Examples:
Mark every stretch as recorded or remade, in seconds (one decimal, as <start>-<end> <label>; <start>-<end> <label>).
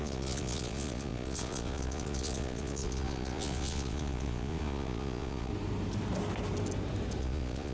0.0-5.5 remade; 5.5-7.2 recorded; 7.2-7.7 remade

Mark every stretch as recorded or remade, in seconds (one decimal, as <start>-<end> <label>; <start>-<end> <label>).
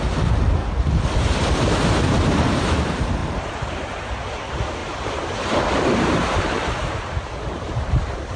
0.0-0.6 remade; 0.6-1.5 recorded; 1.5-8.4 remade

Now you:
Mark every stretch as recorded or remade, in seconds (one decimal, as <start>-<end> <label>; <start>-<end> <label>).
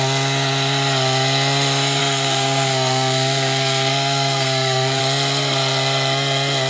0.0-2.0 recorded; 2.0-5.0 remade; 5.0-6.7 recorded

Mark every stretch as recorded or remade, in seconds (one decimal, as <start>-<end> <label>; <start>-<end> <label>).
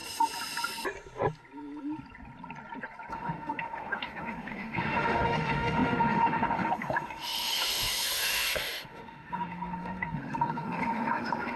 0.0-3.1 recorded; 3.1-11.6 remade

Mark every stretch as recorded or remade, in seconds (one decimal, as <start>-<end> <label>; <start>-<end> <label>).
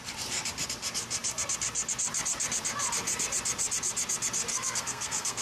0.0-4.5 recorded; 4.5-5.4 remade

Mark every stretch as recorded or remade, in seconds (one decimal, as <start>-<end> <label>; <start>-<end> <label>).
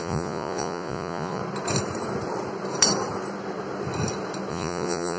0.0-1.4 remade; 1.4-4.5 recorded; 4.5-5.2 remade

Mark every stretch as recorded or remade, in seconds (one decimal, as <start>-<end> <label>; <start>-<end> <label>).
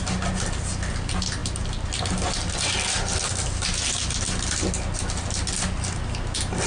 0.0-6.7 recorded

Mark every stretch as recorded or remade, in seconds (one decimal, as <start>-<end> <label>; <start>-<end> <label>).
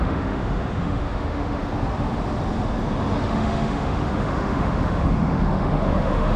0.0-1.6 remade; 1.6-3.2 recorded; 3.2-6.4 remade